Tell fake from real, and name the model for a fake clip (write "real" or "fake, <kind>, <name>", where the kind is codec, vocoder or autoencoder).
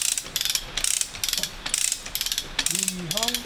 real